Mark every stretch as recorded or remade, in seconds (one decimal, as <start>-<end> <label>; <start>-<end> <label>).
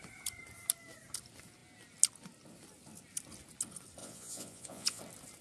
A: 0.0-4.0 recorded; 4.0-5.0 remade; 5.0-5.4 recorded